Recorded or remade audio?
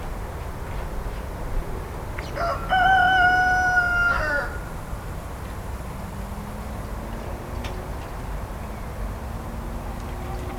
recorded